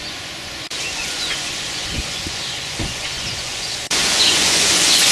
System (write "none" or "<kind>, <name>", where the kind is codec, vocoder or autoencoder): vocoder, Vocos